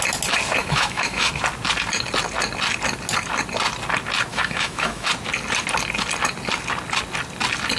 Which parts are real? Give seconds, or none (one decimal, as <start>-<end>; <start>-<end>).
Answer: 0.0-0.6; 1.3-4.3; 5.1-7.8